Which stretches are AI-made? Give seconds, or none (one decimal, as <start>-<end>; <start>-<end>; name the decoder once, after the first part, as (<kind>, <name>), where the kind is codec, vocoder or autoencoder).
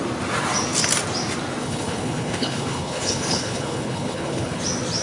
1.6-4.6 (codec, HILCodec)